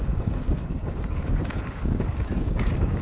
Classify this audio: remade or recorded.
remade